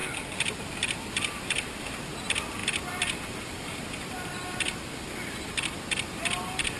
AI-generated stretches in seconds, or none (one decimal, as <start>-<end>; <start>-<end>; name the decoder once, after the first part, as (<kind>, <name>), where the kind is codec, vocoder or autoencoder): none